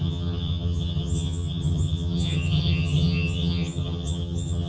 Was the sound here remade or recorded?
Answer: remade